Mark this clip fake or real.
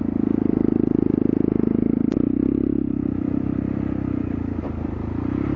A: fake